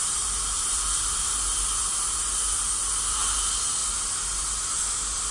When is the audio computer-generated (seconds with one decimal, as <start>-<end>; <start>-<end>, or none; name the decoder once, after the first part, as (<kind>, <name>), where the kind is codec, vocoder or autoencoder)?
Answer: none